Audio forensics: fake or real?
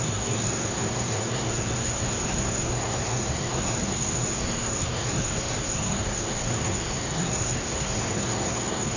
fake